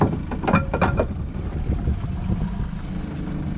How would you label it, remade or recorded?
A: recorded